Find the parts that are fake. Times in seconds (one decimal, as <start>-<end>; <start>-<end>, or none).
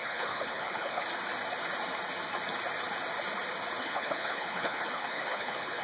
0.0-1.0; 3.8-5.8